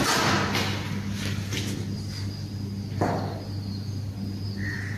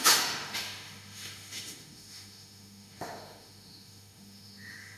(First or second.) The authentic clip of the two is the first